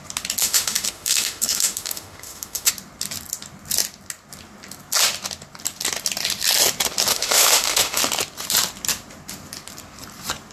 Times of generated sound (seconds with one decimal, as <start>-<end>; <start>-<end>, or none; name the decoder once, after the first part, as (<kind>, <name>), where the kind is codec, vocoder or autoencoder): 0.4-2.7 (autoencoder, DAC-VAE); 7.1-8.0